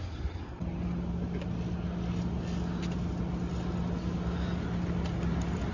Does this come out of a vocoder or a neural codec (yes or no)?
no